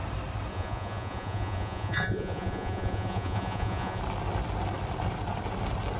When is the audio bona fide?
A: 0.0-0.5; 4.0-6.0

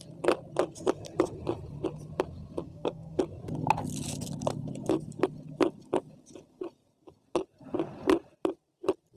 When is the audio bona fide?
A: 0.0-2.6; 3.2-9.2

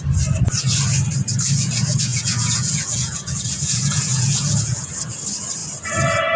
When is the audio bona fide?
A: 0.0-2.1; 4.9-6.4

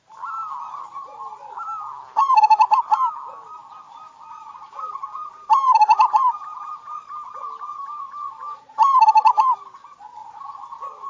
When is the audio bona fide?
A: 0.4-2.2; 10.2-11.1

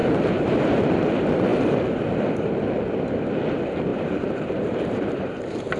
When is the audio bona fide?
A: 0.9-3.9

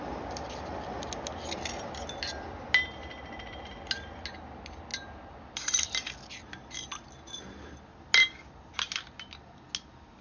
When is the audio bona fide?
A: 0.0-10.2

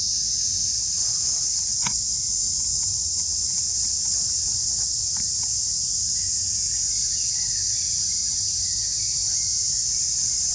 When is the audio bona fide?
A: 0.0-0.7; 2.3-2.9; 5.1-9.8

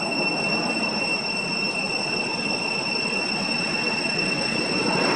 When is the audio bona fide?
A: 0.0-1.8